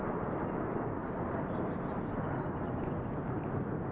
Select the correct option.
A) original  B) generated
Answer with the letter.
A